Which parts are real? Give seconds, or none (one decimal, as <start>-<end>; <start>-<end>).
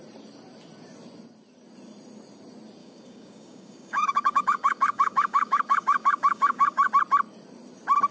0.0-2.8; 6.9-8.1